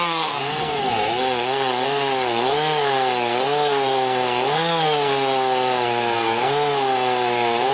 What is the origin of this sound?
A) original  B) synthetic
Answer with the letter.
B